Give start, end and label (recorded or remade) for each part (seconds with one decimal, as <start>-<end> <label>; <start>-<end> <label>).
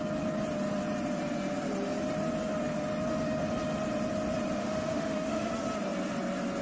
0.0-4.6 recorded; 4.6-5.5 remade; 5.5-6.6 recorded